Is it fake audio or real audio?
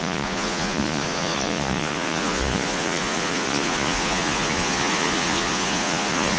fake